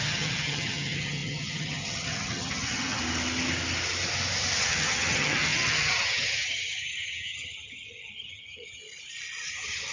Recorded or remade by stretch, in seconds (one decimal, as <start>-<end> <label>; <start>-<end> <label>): 0.0-3.0 remade; 3.0-4.6 recorded; 4.6-8.8 remade; 8.8-9.5 recorded; 9.5-9.9 remade